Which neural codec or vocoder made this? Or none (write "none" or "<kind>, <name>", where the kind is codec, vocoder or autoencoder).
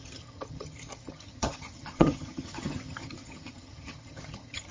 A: vocoder, HiFi-GAN